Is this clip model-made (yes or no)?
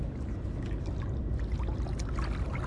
no